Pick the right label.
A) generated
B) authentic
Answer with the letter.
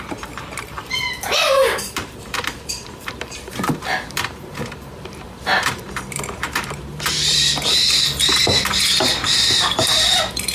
A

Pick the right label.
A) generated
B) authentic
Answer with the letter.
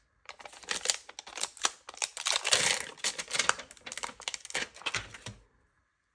B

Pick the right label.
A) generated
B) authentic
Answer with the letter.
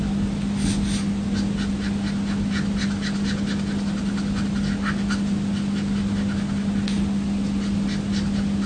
B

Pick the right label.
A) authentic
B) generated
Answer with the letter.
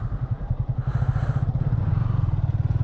B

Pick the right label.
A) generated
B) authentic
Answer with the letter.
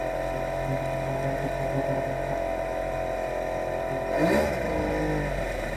B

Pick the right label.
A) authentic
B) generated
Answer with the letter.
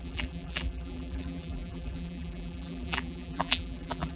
B